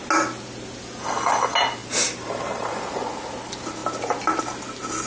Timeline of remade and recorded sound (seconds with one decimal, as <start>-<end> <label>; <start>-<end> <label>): 0.0-1.8 recorded; 1.8-3.0 remade; 3.0-5.1 recorded